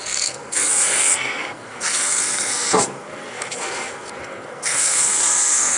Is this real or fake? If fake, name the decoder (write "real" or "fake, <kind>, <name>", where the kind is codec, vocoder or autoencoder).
fake, codec, SNAC